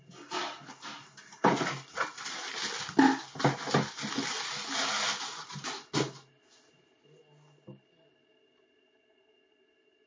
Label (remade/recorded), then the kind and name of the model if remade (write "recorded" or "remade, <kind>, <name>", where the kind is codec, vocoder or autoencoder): recorded